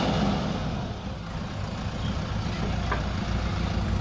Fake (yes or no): no